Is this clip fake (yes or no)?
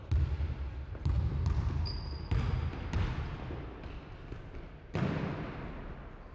no